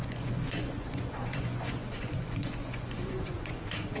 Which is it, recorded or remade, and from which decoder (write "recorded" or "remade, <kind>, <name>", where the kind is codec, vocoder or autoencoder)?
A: remade, vocoder, Vocos